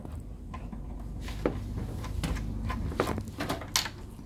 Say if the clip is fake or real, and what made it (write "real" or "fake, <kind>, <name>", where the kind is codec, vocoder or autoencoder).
real